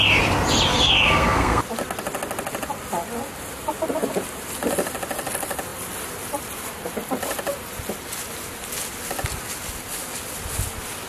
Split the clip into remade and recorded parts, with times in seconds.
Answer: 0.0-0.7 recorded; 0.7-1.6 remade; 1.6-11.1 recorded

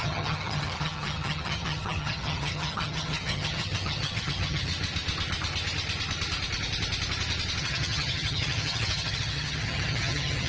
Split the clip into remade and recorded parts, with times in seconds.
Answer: 0.0-4.7 remade; 4.7-7.6 recorded; 7.6-10.5 remade

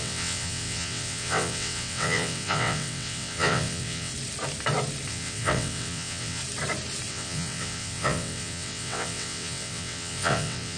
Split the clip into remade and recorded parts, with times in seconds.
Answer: 0.0-4.1 remade; 4.1-5.1 recorded; 5.1-6.4 remade; 6.4-7.1 recorded; 7.1-10.8 remade

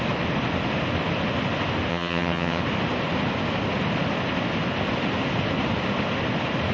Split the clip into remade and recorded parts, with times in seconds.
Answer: 0.0-1.9 recorded; 1.9-2.6 remade; 2.6-6.7 recorded

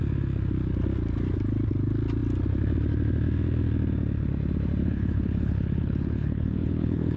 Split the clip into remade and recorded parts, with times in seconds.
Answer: 0.0-4.8 recorded; 4.8-7.2 remade

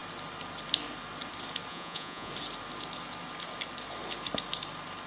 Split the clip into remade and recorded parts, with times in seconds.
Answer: 0.0-1.7 recorded; 1.7-2.3 remade; 2.3-5.1 recorded

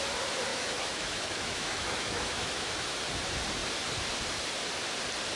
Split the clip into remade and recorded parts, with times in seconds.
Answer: 0.0-0.5 recorded; 0.5-3.0 remade; 3.0-5.4 recorded

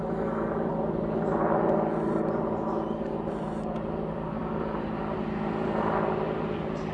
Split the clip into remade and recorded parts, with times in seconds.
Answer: 0.0-6.9 recorded